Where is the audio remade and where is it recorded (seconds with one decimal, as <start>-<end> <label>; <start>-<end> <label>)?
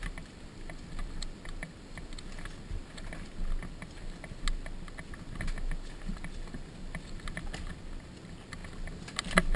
0.0-9.6 recorded